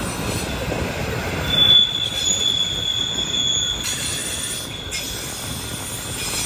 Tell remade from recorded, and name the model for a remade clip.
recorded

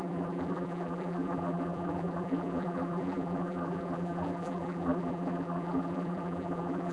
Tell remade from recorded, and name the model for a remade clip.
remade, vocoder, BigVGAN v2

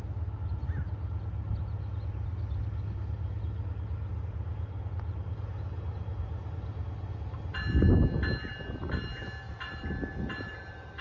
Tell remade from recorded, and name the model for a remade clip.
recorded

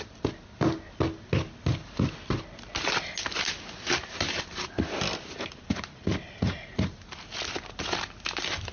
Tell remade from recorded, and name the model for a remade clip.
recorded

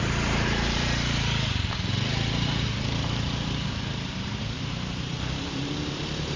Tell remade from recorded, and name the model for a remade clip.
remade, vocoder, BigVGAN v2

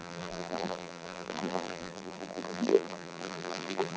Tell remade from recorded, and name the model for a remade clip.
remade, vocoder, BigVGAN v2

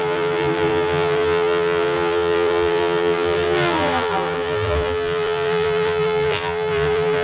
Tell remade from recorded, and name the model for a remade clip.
remade, vocoder, BigVGAN v2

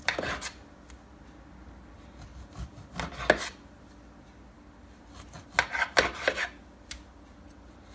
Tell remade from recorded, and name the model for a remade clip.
recorded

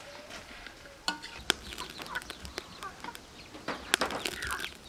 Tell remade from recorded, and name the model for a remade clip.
recorded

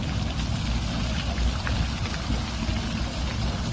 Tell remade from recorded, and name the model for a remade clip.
recorded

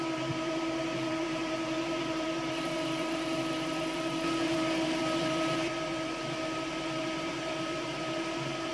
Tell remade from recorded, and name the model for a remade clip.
remade, vocoder, BigVGAN v2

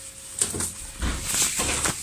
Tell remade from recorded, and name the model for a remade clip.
recorded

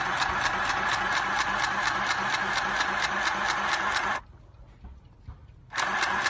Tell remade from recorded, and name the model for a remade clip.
recorded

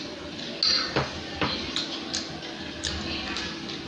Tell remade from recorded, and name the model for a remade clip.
recorded